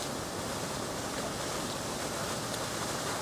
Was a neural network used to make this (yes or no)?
no